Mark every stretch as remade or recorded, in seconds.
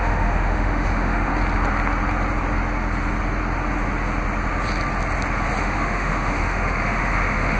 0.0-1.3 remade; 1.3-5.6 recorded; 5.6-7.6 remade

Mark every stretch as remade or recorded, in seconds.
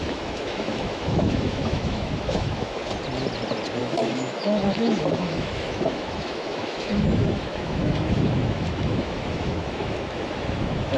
0.0-2.8 remade; 2.8-3.8 recorded; 3.8-11.0 remade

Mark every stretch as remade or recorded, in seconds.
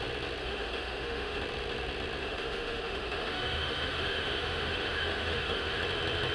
0.0-0.4 recorded; 0.4-1.4 remade; 1.4-2.2 recorded; 2.2-5.8 remade; 5.8-6.3 recorded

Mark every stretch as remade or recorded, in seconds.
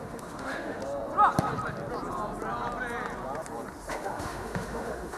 0.0-0.8 remade; 0.8-3.9 recorded; 3.9-5.2 remade